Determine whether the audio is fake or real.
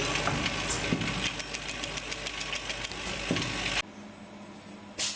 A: real